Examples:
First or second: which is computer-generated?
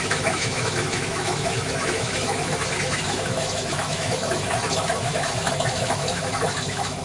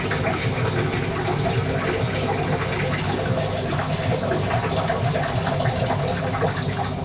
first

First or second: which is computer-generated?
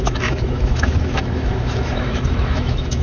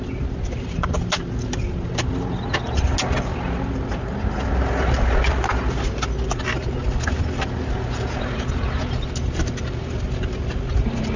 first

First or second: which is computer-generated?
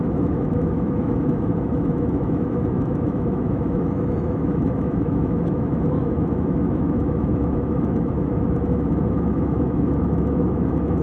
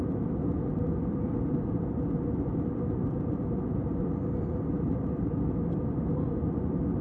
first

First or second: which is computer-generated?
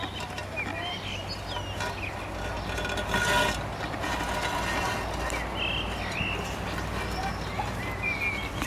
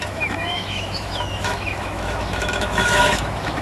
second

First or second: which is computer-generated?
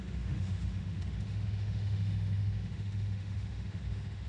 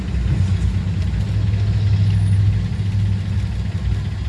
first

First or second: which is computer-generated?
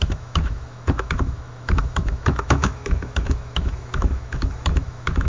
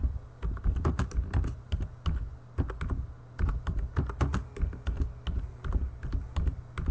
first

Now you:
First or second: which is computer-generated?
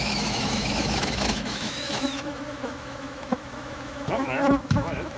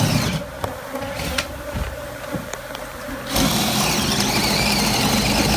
first